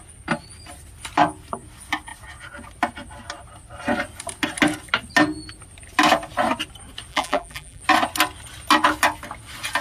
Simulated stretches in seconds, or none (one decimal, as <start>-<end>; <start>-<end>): 7.1-7.8